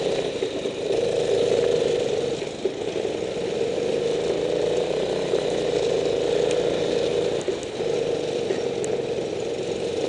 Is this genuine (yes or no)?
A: yes